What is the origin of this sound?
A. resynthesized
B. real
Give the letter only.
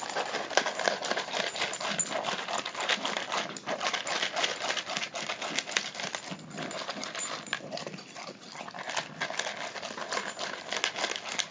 B